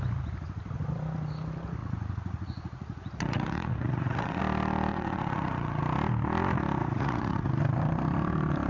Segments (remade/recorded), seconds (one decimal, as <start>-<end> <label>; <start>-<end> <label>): 0.0-1.8 recorded; 1.8-4.4 remade; 4.4-4.9 recorded; 4.9-5.8 remade; 5.8-6.8 recorded; 6.8-7.5 remade; 7.5-8.7 recorded